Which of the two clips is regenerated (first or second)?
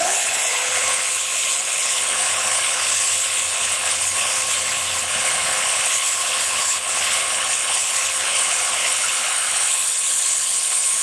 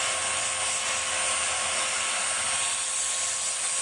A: first